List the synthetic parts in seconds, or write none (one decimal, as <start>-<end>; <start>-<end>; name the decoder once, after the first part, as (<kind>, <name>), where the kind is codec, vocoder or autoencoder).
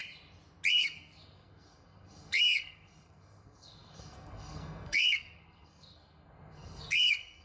0.7-7.4 (codec, SNAC)